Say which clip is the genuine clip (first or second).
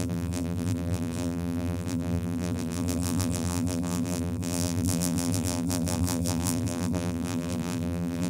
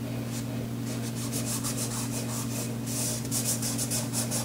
second